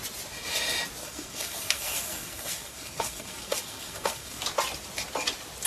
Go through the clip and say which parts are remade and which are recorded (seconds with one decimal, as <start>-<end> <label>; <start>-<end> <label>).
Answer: 0.0-1.0 recorded; 1.0-4.4 remade; 4.4-5.7 recorded